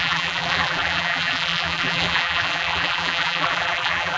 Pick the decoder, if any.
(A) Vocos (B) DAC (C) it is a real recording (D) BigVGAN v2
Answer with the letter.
D